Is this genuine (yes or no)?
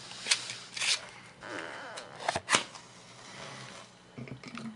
yes